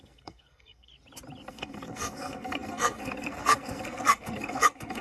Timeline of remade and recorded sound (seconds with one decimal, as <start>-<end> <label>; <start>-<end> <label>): 0.0-0.9 remade; 0.9-1.5 recorded; 1.5-5.0 remade